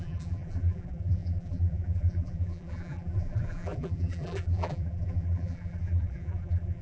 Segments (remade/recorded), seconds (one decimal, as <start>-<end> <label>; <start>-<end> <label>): 0.0-6.8 remade